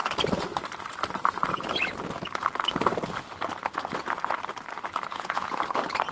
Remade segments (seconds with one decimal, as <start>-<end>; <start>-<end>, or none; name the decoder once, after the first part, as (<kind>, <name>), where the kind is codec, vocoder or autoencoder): 5.1-5.6 (vocoder, Vocos)